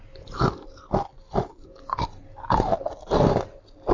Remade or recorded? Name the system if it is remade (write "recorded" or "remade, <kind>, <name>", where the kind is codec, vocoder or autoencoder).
recorded